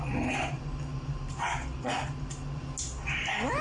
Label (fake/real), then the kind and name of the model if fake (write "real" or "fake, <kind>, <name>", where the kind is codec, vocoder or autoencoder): real